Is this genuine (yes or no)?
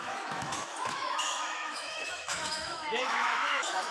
no